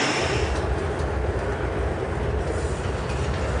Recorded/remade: recorded